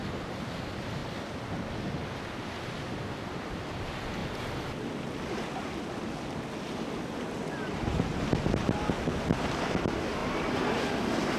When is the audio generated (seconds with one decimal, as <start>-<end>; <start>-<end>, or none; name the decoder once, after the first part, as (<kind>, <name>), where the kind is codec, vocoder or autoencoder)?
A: 8.1-9.6 (vocoder, BigVGAN v2)